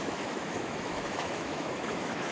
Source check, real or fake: fake